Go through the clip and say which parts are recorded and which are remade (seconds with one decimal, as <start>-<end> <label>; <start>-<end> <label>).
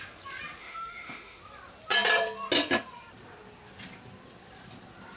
0.0-0.6 recorded; 0.6-1.4 remade; 1.4-5.2 recorded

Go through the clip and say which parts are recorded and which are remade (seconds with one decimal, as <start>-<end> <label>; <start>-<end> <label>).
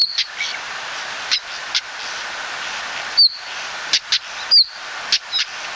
0.0-5.8 recorded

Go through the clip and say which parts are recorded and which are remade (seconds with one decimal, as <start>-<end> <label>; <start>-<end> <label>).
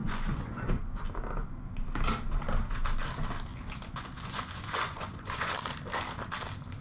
0.0-1.0 remade; 1.0-3.5 recorded; 3.5-5.5 remade; 5.5-6.8 recorded